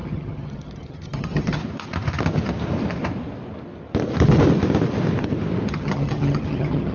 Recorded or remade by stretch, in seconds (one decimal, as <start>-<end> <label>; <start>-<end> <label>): 0.0-1.6 remade; 1.6-5.7 recorded; 5.7-6.9 remade